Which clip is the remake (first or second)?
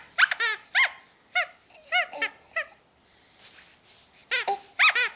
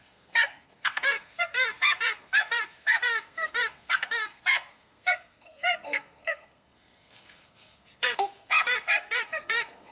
second